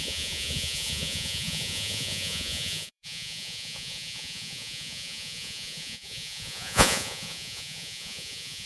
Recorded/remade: remade